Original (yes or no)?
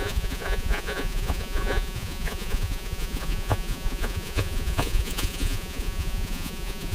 no